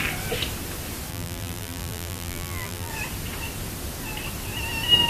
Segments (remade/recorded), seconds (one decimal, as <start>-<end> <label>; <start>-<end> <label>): 0.0-1.1 recorded; 1.1-2.9 remade; 2.9-5.1 recorded